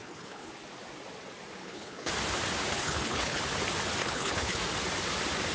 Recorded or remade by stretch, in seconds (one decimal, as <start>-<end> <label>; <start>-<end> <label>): 0.0-0.5 remade; 0.5-1.6 recorded; 1.6-2.1 remade; 2.1-2.7 recorded; 2.7-3.4 remade; 3.4-4.0 recorded; 4.0-4.6 remade; 4.6-5.5 recorded